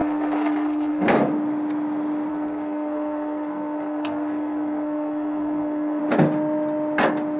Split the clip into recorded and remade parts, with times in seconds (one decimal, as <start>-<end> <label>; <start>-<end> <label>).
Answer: 0.0-1.1 remade; 1.1-2.3 recorded; 2.3-6.0 remade; 6.0-7.4 recorded